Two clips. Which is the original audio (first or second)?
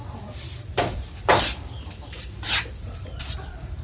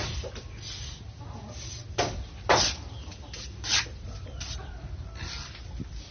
second